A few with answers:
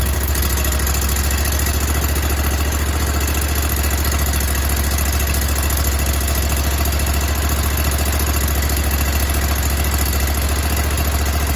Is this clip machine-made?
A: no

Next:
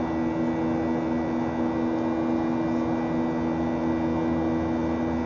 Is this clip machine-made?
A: no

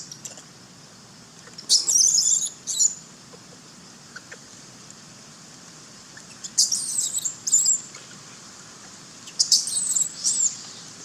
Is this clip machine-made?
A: yes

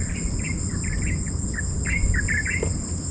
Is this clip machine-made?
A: no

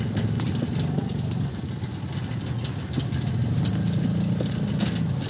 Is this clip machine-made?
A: no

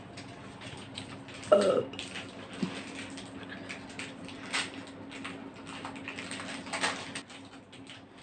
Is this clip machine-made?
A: no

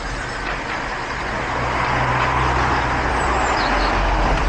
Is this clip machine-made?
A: no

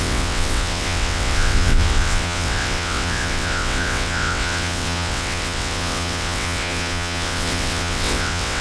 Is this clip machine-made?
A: yes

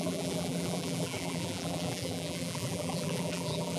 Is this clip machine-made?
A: yes